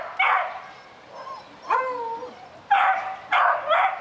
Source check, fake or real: real